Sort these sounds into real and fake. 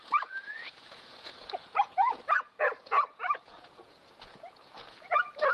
fake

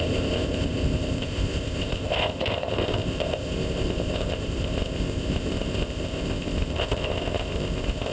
fake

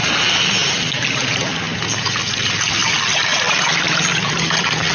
real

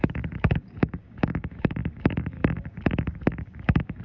fake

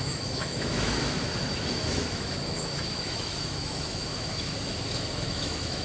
fake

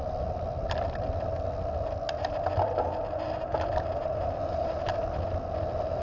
real